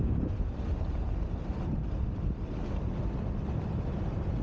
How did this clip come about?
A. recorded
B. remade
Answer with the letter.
A